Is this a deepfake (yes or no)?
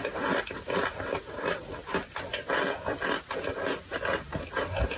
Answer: no